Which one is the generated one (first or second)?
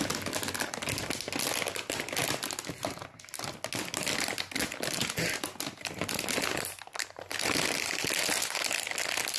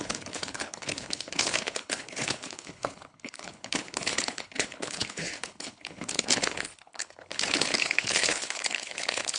second